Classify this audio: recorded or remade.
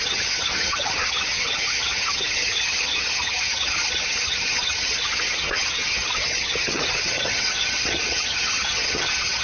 remade